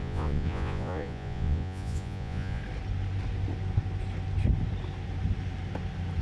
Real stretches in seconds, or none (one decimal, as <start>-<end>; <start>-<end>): 2.6-6.2